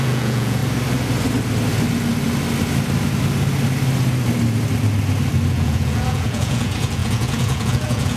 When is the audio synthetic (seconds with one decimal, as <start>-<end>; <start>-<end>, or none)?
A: 0.0-0.6; 5.5-8.2